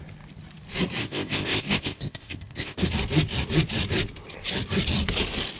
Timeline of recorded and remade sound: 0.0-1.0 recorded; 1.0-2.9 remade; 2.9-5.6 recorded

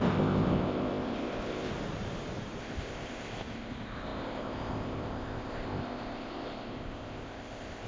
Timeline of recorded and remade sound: 0.0-1.7 remade; 1.7-2.6 recorded; 2.6-7.9 remade

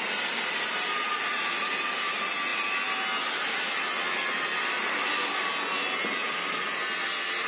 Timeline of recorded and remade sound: 0.0-7.5 recorded

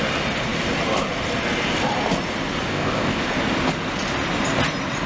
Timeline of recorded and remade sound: 0.0-2.7 recorded; 2.7-3.3 remade; 3.3-5.1 recorded

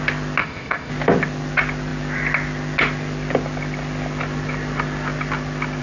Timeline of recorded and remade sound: 0.0-0.4 recorded; 0.4-0.9 remade; 0.9-5.8 recorded

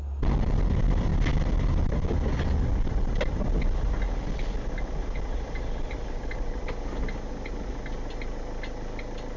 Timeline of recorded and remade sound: 0.0-9.4 recorded

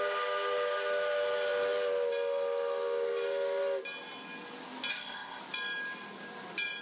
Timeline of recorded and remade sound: 0.0-4.9 recorded; 4.9-5.4 remade; 5.4-6.8 recorded